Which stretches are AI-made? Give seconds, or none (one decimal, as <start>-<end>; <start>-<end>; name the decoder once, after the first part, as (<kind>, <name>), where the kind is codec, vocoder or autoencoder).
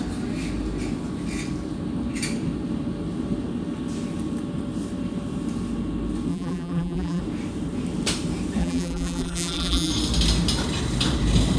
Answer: 6.3-7.2 (vocoder, BigVGAN v2); 8.6-9.9